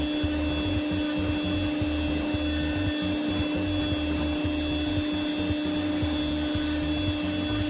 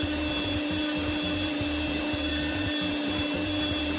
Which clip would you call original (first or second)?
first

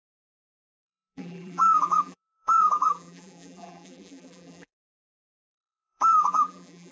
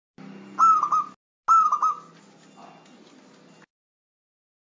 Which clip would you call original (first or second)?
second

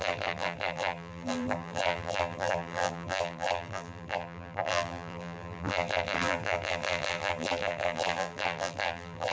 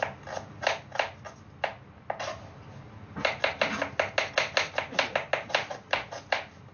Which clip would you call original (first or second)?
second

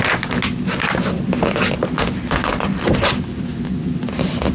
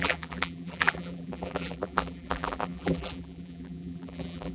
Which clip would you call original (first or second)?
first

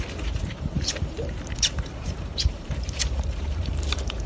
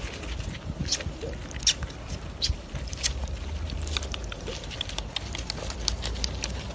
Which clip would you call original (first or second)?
second